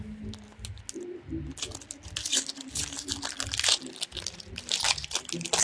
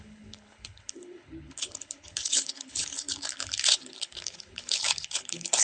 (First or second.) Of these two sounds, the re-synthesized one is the second